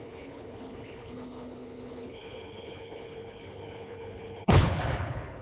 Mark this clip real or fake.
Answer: fake